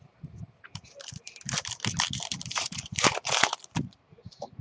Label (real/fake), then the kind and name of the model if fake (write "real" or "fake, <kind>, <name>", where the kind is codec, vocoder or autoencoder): fake, vocoder, BigVGAN v2